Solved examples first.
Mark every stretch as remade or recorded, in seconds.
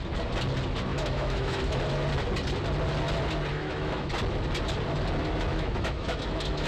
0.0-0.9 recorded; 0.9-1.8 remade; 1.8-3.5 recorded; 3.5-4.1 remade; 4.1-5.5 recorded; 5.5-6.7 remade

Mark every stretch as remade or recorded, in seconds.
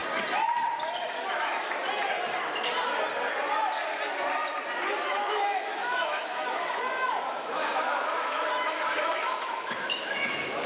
0.0-1.0 recorded; 1.0-1.8 remade; 1.8-5.1 recorded; 5.1-10.7 remade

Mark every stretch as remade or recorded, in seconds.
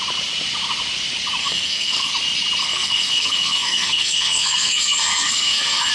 0.0-1.4 recorded; 1.4-2.1 remade; 2.1-2.6 recorded; 2.6-5.9 remade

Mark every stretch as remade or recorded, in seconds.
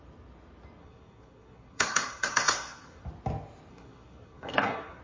0.0-0.8 recorded; 0.8-3.0 remade; 3.0-3.7 recorded; 3.7-5.0 remade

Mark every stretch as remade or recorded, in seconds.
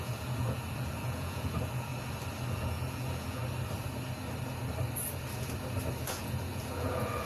0.0-1.9 remade; 1.9-2.5 recorded; 2.5-3.4 remade; 3.4-6.1 recorded; 6.1-7.3 remade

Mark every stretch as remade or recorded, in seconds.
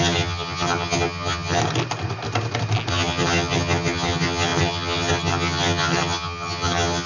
0.0-1.6 remade; 1.6-2.9 recorded; 2.9-7.1 remade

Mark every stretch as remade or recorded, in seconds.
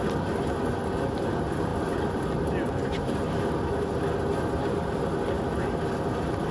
0.0-6.5 recorded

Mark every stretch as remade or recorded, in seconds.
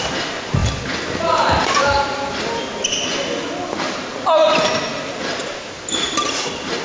0.0-6.8 recorded